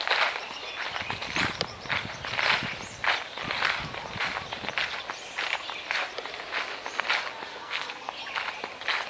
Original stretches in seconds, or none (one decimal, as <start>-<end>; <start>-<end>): 0.0-7.5; 8.1-9.1